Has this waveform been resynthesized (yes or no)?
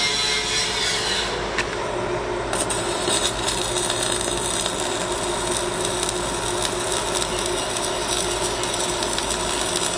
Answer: no